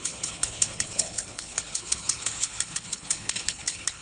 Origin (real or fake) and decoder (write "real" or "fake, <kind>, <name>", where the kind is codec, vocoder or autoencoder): fake, codec, HILCodec